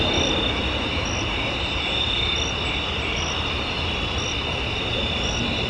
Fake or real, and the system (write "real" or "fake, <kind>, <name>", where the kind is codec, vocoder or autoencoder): real